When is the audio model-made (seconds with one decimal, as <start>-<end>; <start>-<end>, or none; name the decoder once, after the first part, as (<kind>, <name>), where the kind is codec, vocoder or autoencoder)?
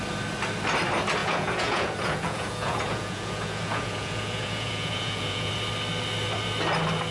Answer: 1.2-5.5 (vocoder, Vocos)